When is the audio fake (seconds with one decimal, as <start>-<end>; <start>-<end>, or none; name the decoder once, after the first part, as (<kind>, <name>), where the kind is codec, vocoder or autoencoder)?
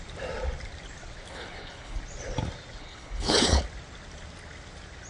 1.3-2.0 (codec, HILCodec); 2.8-3.6